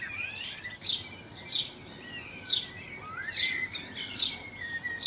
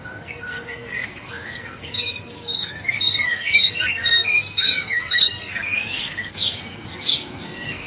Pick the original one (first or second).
first